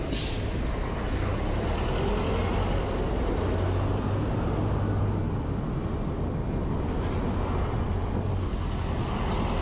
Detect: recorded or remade recorded